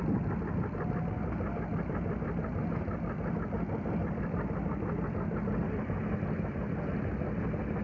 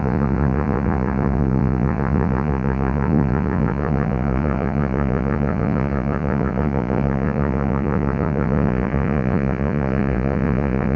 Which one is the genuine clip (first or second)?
first